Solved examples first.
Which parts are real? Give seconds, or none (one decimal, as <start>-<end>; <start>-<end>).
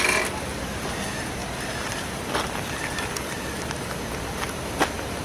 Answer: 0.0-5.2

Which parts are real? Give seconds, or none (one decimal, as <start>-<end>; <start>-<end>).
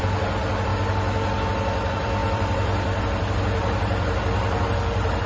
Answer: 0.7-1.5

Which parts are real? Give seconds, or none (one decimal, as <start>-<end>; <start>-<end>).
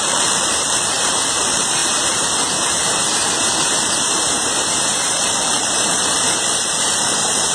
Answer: 1.8-5.0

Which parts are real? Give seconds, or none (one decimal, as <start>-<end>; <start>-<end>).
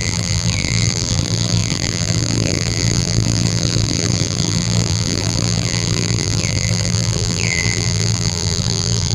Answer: none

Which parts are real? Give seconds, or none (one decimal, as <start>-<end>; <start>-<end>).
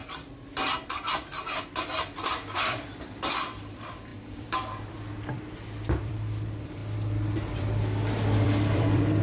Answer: 0.0-1.1; 6.8-7.5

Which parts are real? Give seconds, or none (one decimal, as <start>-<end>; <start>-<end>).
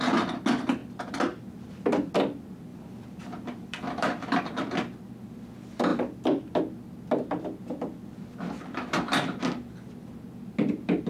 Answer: 0.0-2.7; 4.6-11.1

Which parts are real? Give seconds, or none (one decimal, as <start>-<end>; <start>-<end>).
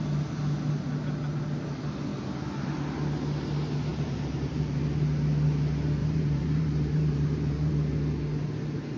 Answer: 0.0-3.9; 4.8-6.0; 7.7-9.0